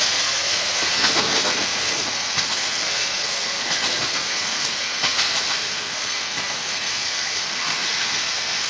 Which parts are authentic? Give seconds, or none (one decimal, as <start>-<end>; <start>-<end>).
none